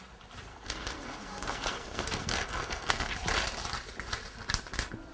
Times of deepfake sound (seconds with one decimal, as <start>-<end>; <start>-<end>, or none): 0.5-3.1